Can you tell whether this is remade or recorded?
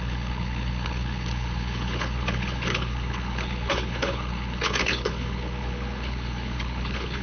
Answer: remade